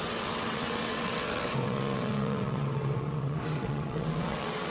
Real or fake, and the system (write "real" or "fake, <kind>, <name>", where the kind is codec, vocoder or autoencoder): fake, vocoder, WaveNeXt